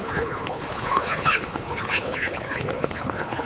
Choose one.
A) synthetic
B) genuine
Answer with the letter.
A